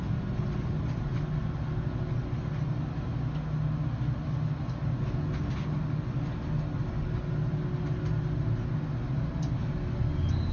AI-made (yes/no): no